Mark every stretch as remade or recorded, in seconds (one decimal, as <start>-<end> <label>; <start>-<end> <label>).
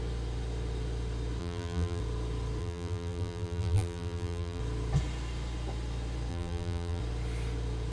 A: 0.0-1.4 recorded; 1.4-2.0 remade; 2.0-2.6 recorded; 2.6-4.6 remade; 4.6-6.3 recorded; 6.3-7.0 remade; 7.0-7.9 recorded